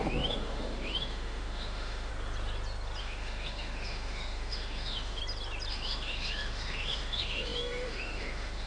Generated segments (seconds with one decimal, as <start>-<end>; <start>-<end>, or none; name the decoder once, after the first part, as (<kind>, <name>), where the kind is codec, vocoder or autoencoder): 0.0-2.1 (autoencoder, DAC-VAE); 3.0-5.2; 5.7-8.7